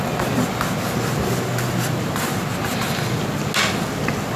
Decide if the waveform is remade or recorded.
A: recorded